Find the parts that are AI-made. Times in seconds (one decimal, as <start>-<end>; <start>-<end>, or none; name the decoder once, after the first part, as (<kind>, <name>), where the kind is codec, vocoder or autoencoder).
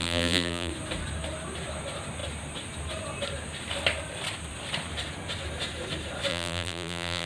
0.0-0.7 (vocoder, BigVGAN v2); 6.3-7.3